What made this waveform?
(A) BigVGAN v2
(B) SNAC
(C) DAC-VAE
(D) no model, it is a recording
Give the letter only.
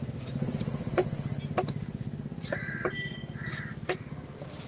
D